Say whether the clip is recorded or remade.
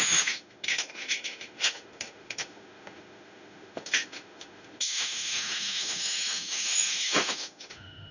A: remade